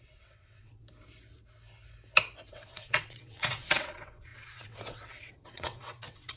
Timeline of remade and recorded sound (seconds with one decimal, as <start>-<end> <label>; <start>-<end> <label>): 0.0-0.8 remade; 0.8-2.5 recorded; 2.5-6.4 remade